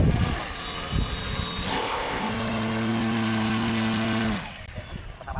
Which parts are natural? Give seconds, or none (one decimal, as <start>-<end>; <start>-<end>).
0.0-1.7; 2.3-5.4